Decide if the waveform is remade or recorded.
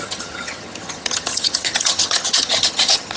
remade